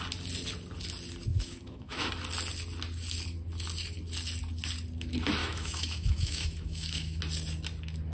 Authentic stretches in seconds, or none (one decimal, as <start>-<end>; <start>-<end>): 0.0-1.3; 2.1-5.4; 7.2-8.1